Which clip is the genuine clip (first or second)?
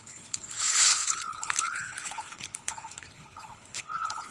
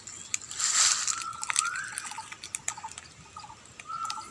second